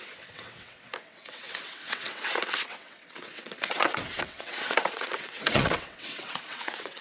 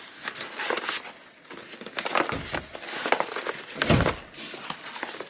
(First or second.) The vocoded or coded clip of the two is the first